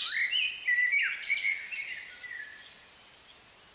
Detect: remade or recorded recorded